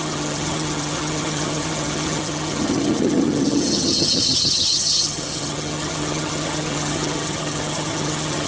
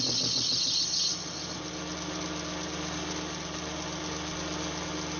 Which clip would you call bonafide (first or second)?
second